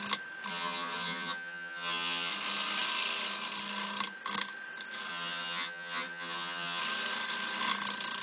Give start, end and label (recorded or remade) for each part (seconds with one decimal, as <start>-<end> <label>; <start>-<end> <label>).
0.0-0.5 recorded; 0.5-2.3 remade; 2.3-5.1 recorded; 5.1-6.8 remade; 6.8-8.2 recorded

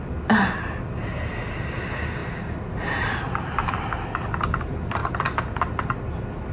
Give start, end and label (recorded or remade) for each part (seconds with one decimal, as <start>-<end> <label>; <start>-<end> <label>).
0.0-6.5 recorded

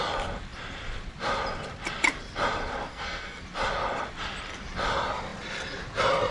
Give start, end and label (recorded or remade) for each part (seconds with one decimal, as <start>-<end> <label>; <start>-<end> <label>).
0.0-2.9 recorded; 2.9-3.4 remade; 3.4-6.3 recorded